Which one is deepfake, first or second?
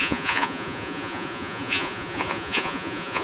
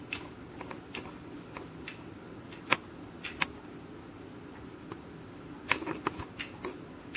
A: first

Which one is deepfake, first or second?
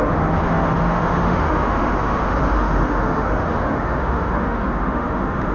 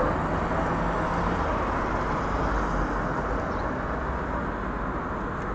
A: first